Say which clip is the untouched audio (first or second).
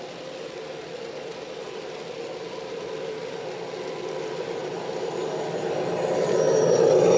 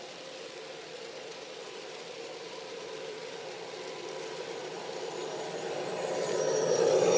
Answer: first